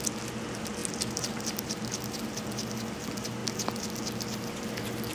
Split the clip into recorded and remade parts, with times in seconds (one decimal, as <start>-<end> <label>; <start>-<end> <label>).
0.0-5.1 recorded